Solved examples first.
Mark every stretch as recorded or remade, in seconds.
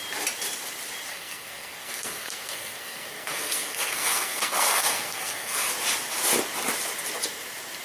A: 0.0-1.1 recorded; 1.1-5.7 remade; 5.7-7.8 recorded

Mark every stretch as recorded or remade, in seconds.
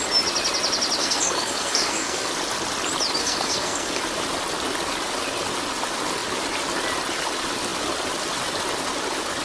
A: 0.0-1.0 recorded; 1.0-2.3 remade; 2.3-3.2 recorded; 3.2-4.0 remade; 4.0-9.4 recorded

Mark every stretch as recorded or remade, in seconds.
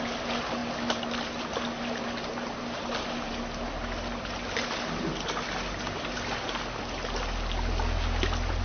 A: 0.0-8.6 recorded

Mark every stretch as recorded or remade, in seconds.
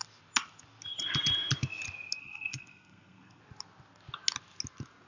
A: 0.0-2.2 recorded; 2.2-3.4 remade; 3.4-5.1 recorded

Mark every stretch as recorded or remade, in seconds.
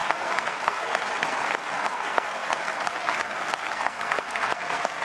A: 0.0-5.0 remade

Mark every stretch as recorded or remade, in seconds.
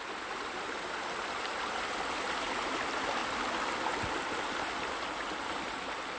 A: 0.0-6.2 recorded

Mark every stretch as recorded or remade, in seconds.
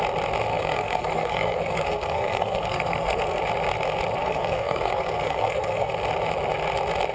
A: 0.0-0.5 recorded; 0.5-3.4 remade; 3.4-4.2 recorded; 4.2-5.9 remade; 5.9-7.1 recorded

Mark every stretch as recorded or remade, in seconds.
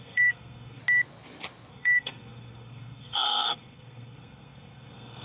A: 0.0-0.8 remade; 0.8-1.7 recorded; 1.7-5.2 remade